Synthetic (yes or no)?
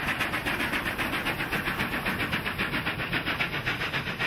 no